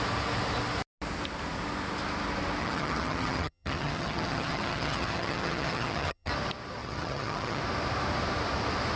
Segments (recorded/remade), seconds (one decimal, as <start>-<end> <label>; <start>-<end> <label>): 0.0-2.6 recorded; 2.6-6.3 remade; 6.3-6.8 recorded; 6.8-7.6 remade; 7.6-9.0 recorded